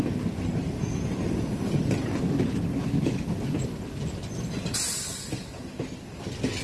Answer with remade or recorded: recorded